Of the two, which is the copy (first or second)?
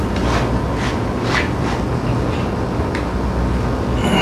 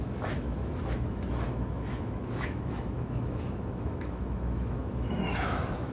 second